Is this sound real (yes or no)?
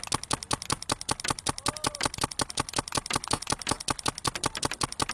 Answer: yes